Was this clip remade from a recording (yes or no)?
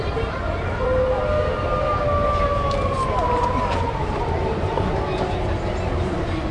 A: no